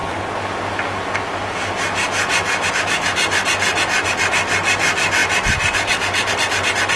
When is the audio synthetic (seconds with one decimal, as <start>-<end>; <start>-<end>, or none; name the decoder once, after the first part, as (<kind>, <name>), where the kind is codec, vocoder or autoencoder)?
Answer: none